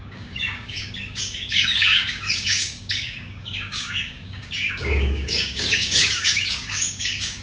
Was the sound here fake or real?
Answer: fake